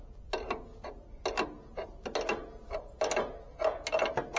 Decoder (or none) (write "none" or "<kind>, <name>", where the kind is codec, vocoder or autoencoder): none